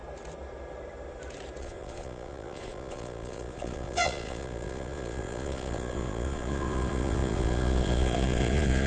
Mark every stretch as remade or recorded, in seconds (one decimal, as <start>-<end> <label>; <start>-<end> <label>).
0.0-1.6 recorded; 1.6-8.9 remade